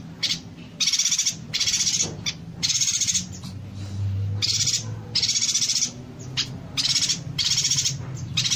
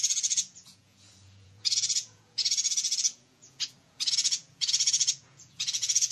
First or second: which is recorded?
first